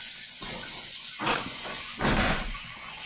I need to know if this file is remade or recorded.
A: remade